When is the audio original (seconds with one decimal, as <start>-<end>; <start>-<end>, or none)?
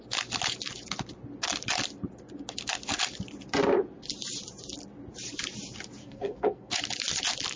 0.0-6.0; 6.7-7.6